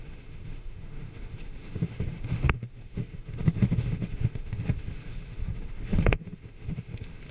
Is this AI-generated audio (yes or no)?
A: yes